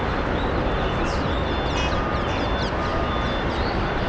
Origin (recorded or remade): recorded